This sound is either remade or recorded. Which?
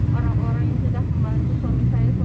recorded